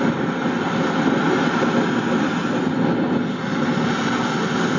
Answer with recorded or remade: recorded